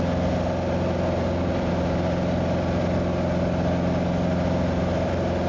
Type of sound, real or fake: real